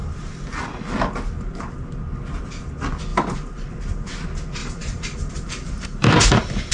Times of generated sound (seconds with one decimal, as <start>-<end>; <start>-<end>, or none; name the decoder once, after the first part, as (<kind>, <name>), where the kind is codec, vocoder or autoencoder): 3.1-3.7 (vocoder, BigVGAN v2); 4.6-6.7